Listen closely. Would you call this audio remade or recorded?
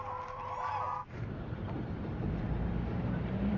remade